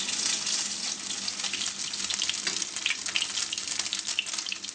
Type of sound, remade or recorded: recorded